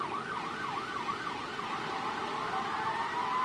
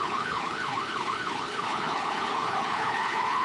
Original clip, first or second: first